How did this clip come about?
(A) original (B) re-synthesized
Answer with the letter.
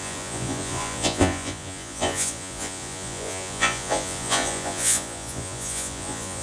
B